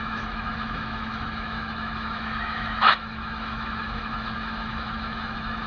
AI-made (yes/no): yes